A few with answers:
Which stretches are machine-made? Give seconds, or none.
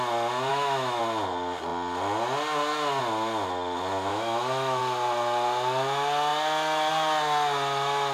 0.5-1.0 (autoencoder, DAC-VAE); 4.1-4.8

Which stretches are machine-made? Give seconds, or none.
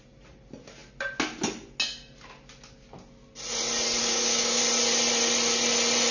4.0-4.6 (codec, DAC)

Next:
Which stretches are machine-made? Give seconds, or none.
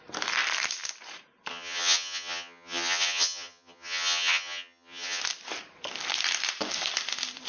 1.5-5.2 (vocoder, HiFi-GAN)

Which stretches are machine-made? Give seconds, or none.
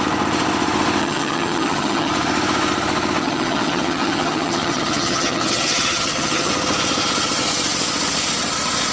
1.0-2.1 (vocoder, HiFi-GAN); 3.2-6.5